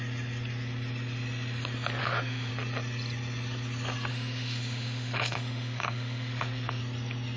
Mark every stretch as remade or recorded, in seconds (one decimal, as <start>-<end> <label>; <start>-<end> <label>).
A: 0.0-2.0 recorded; 2.0-2.5 remade; 2.5-4.1 recorded; 4.1-6.8 remade; 6.8-7.4 recorded